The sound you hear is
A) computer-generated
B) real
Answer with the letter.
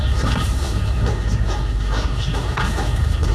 A